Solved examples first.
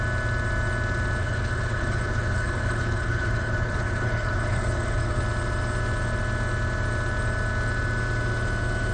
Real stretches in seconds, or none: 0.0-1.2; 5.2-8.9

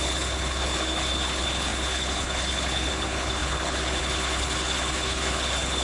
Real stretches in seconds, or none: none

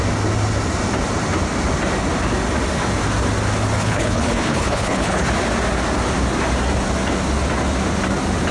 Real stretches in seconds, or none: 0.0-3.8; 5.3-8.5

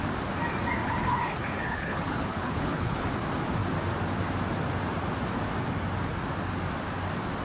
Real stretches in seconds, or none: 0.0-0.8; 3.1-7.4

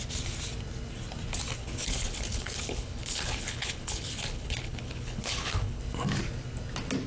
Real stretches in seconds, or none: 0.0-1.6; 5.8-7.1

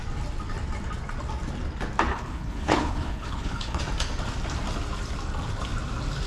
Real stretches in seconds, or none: 0.0-2.1; 3.8-6.3

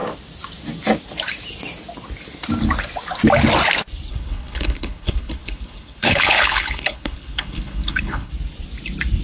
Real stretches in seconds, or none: 0.0-4.1; 8.3-9.2